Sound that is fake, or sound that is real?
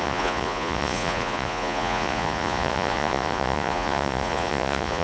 fake